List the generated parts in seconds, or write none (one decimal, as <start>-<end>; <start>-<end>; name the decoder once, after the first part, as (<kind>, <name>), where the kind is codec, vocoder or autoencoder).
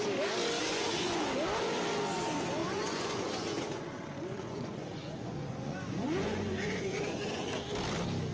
0.6-1.2 (vocoder, Vocos); 2.6-7.6